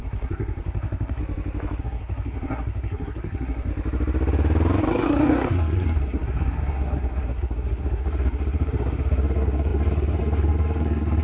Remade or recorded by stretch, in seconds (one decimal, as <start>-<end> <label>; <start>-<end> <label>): 0.0-1.2 remade; 1.2-1.8 recorded; 1.8-3.7 remade; 3.7-4.8 recorded; 4.8-11.2 remade